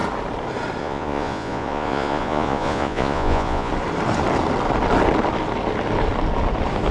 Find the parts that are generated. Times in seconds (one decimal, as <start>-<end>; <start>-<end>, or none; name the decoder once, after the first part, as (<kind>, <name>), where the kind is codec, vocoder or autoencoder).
0.8-3.7 (vocoder, Vocos)